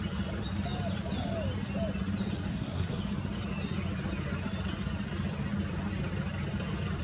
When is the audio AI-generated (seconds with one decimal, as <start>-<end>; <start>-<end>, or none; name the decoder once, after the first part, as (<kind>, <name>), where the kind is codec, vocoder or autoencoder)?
2.5-3.0 (codec, SNAC)